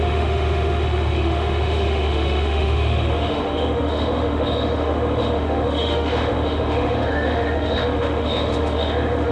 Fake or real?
fake